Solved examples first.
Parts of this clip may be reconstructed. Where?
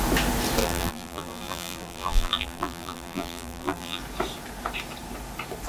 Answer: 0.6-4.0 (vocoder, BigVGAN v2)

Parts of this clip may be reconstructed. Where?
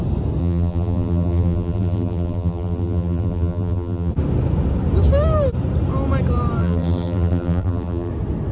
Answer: 0.4-4.1 (vocoder, BigVGAN v2); 6.6-8.1